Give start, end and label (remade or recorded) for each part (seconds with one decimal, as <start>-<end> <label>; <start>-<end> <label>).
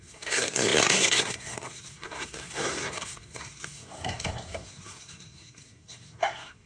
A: 0.0-6.7 remade